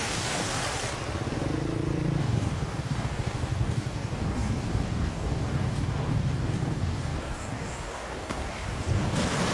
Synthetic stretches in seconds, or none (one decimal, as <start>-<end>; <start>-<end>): 0.0-0.6; 2.2-9.5